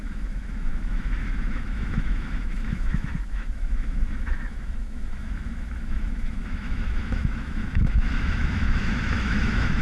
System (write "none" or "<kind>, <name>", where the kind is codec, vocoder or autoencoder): autoencoder, DAC-VAE